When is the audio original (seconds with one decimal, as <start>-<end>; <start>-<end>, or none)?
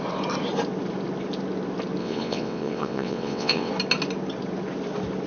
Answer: 0.0-2.0; 3.7-5.3